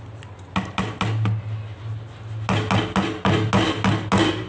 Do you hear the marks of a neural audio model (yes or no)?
no